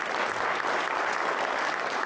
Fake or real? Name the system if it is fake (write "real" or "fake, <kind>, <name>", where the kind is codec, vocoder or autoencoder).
real